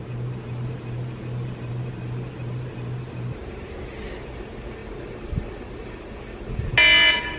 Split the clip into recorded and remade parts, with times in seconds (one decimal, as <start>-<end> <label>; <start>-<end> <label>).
0.0-4.8 recorded; 4.8-6.1 remade; 6.1-7.4 recorded